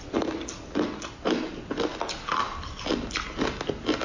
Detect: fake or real real